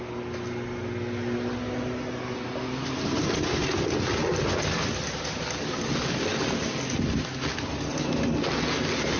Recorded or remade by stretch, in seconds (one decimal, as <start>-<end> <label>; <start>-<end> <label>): 0.0-9.2 recorded